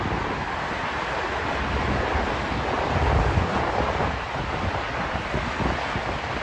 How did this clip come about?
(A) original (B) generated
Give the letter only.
A